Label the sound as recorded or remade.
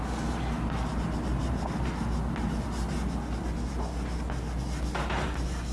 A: recorded